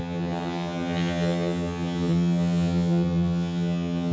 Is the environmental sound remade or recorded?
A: remade